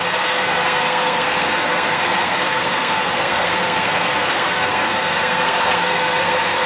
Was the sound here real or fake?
fake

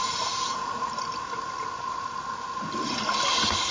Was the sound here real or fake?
real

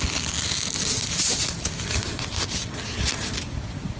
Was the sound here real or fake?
real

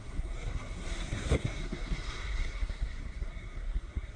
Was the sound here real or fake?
fake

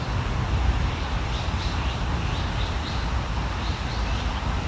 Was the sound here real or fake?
real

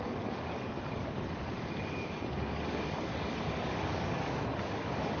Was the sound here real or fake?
fake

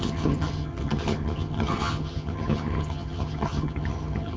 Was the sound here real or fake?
fake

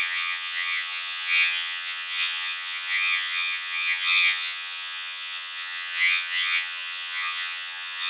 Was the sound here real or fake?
fake